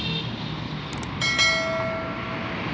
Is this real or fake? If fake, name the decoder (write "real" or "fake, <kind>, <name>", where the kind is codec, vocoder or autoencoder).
real